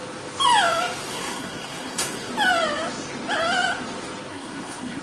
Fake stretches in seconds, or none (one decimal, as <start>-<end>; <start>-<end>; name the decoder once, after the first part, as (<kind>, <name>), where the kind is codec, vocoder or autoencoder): 1.1-2.3 (codec, SNAC); 4.3-5.0